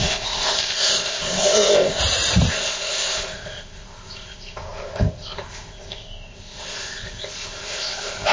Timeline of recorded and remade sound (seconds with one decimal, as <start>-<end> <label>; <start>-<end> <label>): 0.0-2.0 remade; 2.0-2.5 recorded; 2.5-8.3 remade